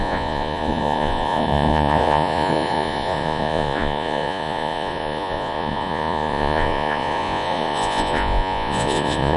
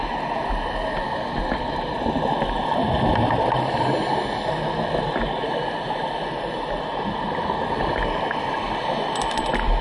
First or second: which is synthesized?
first